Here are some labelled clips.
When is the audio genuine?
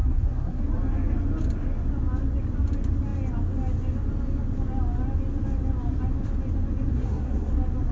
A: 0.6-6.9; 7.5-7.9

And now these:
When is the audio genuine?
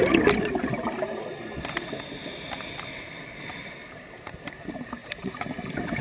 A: 0.0-3.4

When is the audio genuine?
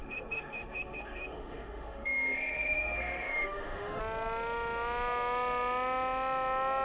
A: 4.0-6.8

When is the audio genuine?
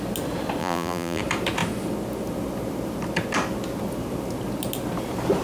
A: 0.0-0.6; 1.2-5.4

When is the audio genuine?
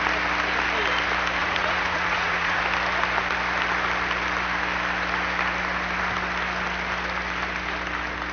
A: 0.0-1.4; 2.6-8.3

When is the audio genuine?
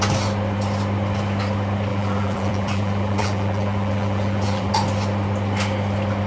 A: 0.0-1.9; 4.7-6.3